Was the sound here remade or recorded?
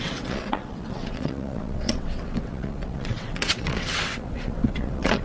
remade